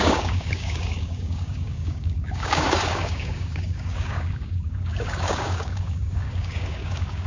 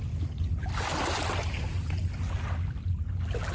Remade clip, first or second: first